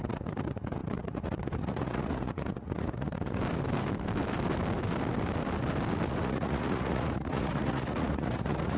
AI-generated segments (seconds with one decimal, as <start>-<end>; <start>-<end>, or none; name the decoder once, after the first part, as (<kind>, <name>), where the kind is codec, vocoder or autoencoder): 0.0-3.4 (vocoder, Vocos); 6.1-8.8